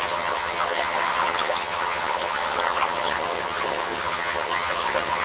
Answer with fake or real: fake